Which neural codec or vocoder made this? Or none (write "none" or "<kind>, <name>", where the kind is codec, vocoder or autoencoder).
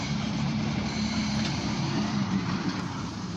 vocoder, BigVGAN v2